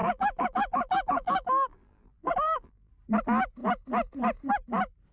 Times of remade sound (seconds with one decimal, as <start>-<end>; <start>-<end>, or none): 0.0-2.9